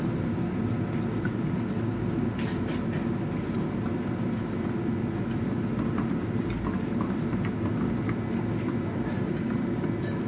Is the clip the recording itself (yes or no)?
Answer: yes